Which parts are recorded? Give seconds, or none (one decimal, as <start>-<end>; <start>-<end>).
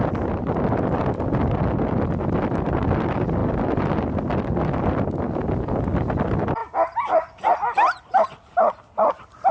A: 0.0-9.5